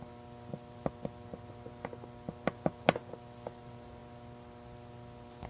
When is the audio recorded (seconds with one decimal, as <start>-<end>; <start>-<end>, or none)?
0.0-5.5

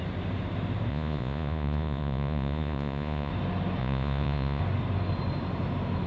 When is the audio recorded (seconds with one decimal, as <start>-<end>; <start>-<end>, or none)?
0.0-0.9; 3.3-3.8; 4.6-6.1

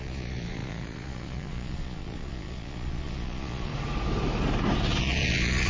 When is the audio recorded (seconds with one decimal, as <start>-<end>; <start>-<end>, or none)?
3.7-5.0

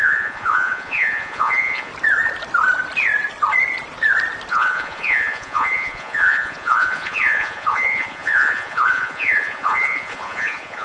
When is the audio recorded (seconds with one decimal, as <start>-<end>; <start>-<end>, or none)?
1.9-4.5